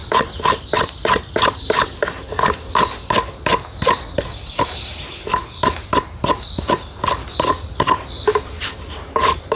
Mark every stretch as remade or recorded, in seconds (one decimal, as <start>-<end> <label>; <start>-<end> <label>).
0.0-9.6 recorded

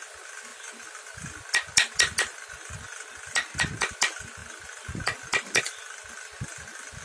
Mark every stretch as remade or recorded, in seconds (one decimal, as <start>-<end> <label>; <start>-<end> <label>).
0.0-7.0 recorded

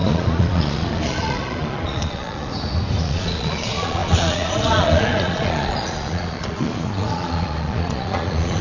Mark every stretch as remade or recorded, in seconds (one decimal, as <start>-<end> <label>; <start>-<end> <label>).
0.0-2.5 remade; 2.5-3.0 recorded; 3.0-8.6 remade

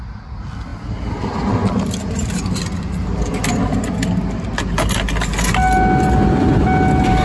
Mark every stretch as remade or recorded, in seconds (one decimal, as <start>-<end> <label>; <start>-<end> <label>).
0.0-7.2 recorded